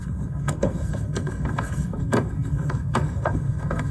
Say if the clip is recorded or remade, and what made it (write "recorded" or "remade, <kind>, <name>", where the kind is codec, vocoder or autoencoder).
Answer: remade, codec, SNAC